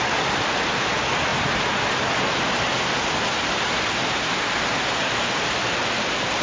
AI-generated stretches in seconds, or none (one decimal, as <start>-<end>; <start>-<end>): none